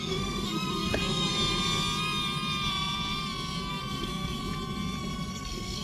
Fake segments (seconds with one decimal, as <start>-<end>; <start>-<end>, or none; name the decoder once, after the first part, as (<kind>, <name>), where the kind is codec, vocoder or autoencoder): 0.0-1.3 (codec, SNAC); 3.7-4.4; 5.3-5.8